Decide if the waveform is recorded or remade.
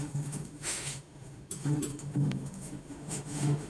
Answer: remade